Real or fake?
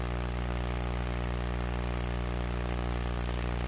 real